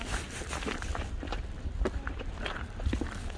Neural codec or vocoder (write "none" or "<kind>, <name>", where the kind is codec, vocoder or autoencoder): vocoder, BigVGAN v2